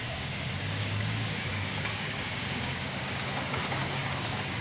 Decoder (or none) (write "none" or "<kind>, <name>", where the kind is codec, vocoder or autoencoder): codec, DAC